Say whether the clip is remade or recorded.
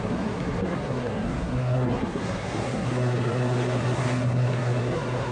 remade